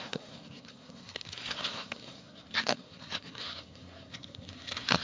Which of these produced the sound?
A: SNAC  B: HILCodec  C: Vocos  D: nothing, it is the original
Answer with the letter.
A